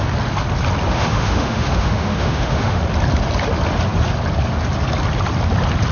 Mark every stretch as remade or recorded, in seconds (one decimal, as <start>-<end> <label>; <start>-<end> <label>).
0.0-0.9 recorded; 0.9-2.8 remade; 2.8-5.9 recorded